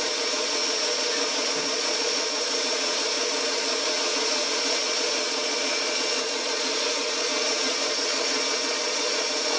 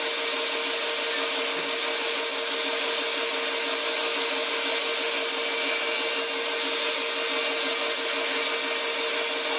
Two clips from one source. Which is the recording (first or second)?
second